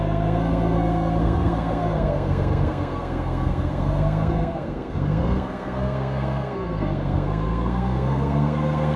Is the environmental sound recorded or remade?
remade